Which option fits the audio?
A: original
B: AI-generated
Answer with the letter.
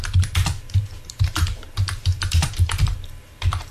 B